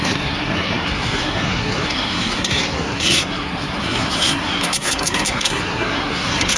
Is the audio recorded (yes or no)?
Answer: no